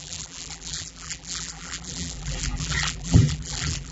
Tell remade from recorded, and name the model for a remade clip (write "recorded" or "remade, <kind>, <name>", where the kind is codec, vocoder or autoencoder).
remade, vocoder, BigVGAN v2